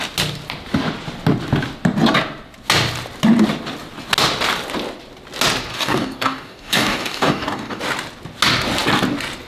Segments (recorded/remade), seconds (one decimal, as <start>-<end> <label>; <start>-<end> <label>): 0.0-5.7 recorded; 5.7-7.8 remade; 7.8-9.5 recorded